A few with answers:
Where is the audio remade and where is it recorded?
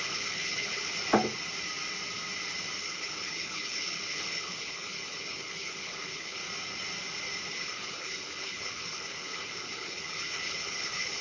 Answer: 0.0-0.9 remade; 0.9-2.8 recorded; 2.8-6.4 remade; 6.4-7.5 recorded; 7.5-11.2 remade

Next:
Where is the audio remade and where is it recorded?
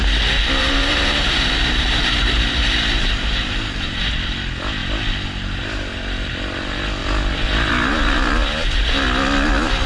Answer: 0.0-0.6 recorded; 0.6-4.1 remade; 4.1-9.9 recorded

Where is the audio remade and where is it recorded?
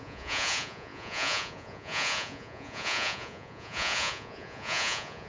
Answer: 0.0-5.3 remade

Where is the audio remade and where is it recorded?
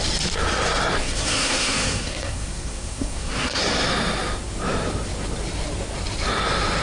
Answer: 0.0-1.0 recorded; 1.0-3.6 remade; 3.6-6.8 recorded